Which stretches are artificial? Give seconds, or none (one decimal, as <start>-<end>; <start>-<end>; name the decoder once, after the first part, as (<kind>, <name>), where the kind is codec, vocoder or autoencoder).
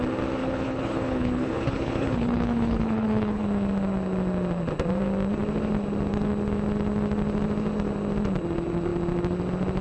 0.4-3.4 (codec, HILCodec)